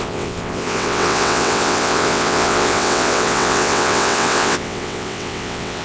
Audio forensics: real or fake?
fake